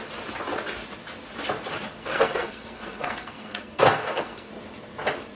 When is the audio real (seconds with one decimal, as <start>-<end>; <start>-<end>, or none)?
0.0-2.0; 4.5-5.4